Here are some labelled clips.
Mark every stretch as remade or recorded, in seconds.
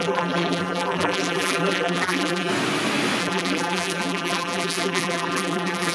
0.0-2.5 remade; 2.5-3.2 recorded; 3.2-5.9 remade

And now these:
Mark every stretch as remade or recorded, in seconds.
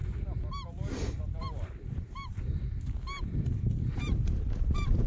0.0-1.3 recorded; 1.3-5.1 remade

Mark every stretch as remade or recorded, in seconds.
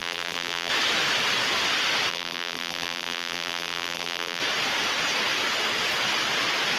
0.0-0.7 remade; 0.7-2.1 recorded; 2.1-4.4 remade; 4.4-6.8 recorded